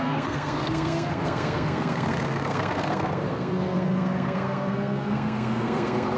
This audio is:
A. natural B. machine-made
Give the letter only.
B